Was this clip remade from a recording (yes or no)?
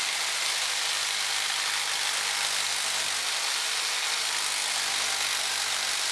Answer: no